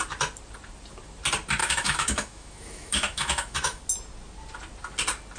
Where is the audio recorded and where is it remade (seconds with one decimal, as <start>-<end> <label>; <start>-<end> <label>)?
0.0-1.6 recorded; 1.6-3.8 remade; 3.8-5.4 recorded